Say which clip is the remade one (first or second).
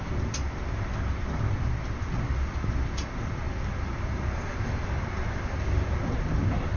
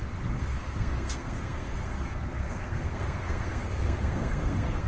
second